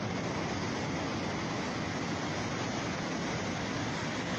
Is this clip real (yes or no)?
yes